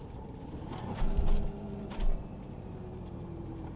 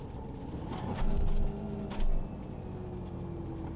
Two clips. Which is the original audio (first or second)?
second